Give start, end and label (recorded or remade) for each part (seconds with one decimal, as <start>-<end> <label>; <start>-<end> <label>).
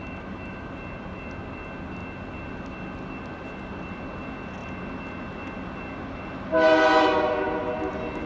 0.0-0.7 remade; 0.7-8.3 recorded